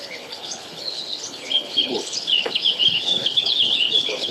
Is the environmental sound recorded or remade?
remade